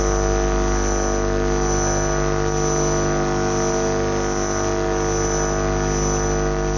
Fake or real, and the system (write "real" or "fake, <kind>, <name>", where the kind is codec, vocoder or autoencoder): real